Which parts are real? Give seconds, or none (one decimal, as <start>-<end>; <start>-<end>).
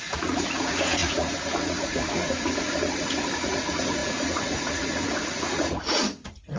none